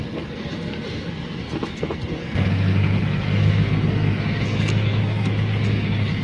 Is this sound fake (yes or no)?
yes